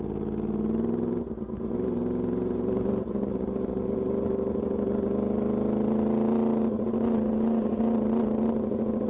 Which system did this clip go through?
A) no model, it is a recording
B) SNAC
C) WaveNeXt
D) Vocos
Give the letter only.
A